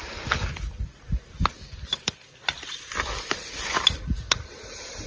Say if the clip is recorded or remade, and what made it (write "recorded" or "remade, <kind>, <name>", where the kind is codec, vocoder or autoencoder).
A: recorded